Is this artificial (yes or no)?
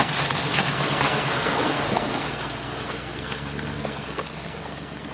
yes